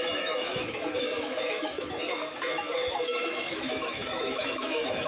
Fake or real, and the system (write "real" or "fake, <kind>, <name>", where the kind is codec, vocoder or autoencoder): fake, autoencoder, DAC-VAE